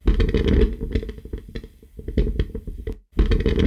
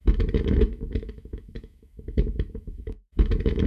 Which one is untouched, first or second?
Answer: first